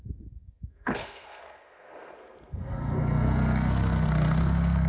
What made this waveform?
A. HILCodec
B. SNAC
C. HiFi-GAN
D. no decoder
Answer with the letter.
B